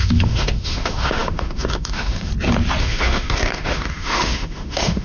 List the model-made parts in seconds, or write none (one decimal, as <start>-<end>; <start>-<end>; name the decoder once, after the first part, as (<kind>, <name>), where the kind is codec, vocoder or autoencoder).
0.0-2.3 (autoencoder, DAC-VAE); 2.8-5.0